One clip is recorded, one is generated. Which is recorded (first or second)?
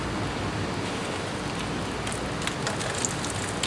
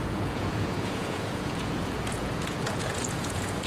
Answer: first